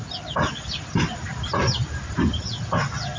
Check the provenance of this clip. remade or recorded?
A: recorded